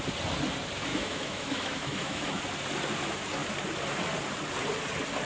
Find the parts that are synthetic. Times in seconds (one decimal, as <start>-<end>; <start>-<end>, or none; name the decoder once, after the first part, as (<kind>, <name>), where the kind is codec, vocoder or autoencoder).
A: 0.9-2.4 (autoencoder, DAC-VAE)